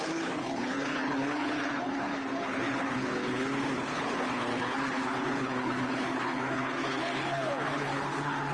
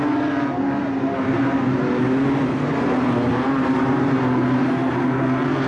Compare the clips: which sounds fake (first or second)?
first